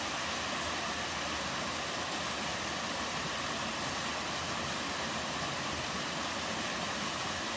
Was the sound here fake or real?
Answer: real